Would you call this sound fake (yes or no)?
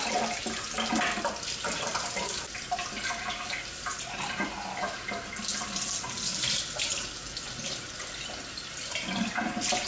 no